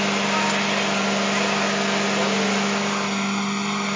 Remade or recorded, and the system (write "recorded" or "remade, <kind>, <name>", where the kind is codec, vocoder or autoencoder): recorded